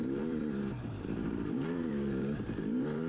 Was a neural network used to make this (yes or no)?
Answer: yes